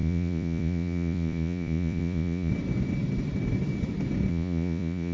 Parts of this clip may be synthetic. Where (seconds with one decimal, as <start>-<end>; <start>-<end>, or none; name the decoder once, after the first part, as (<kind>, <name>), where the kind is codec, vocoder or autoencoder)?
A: 0.0-2.5 (vocoder, Vocos); 4.3-5.1